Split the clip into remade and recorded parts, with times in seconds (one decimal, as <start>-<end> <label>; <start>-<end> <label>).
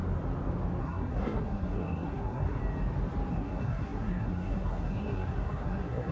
0.0-0.8 recorded; 0.8-2.6 remade; 2.6-3.3 recorded; 3.3-6.1 remade